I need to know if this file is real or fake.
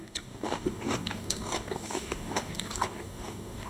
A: fake